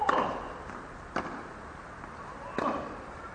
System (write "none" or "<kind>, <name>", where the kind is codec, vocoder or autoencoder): none